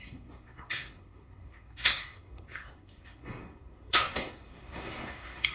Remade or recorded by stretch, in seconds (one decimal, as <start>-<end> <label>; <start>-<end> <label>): 0.0-5.5 remade